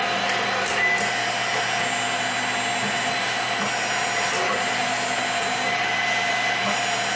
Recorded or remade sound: recorded